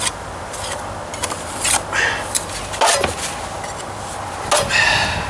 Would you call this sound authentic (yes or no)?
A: yes